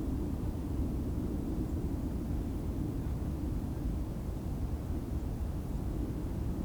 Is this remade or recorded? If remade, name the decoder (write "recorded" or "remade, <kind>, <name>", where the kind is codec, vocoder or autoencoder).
recorded